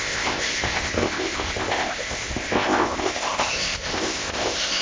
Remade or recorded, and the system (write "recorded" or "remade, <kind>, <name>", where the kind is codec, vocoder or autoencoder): remade, codec, ZipCodec